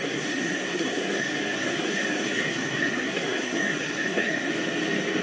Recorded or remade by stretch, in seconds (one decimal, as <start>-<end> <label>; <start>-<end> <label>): 0.0-4.5 remade; 4.5-5.2 recorded